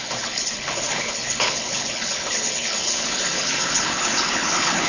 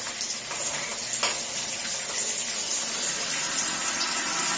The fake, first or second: first